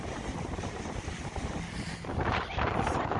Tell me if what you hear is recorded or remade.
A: recorded